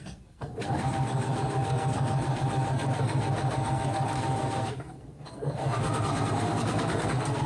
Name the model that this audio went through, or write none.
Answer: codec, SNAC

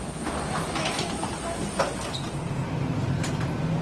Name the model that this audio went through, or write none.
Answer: none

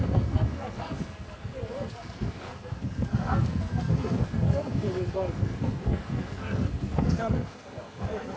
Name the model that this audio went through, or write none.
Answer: codec, SNAC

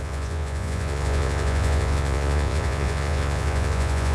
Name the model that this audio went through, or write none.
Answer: vocoder, Vocos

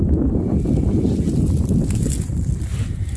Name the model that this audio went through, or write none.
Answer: none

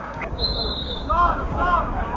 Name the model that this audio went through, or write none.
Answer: codec, DAC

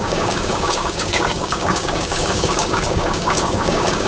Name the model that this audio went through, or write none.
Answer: codec, DAC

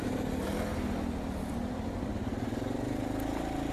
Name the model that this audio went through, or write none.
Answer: none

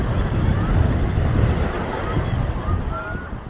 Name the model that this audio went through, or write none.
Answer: none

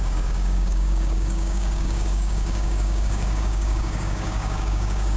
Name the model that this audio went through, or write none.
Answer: codec, DAC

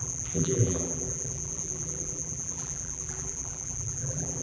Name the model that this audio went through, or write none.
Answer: vocoder, BigVGAN v2